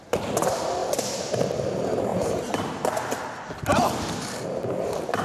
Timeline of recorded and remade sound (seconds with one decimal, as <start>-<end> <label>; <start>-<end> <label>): 0.0-2.1 recorded; 2.1-2.7 remade; 2.7-5.2 recorded